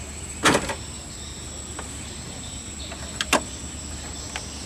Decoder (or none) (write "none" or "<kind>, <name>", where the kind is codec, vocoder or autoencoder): none